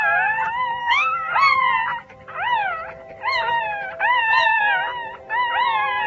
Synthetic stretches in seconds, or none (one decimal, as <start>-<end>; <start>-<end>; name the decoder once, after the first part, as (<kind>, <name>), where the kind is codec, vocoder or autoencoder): 0.8-1.3 (codec, DAC); 4.1-4.6